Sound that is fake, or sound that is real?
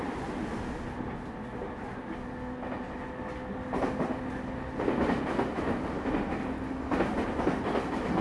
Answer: real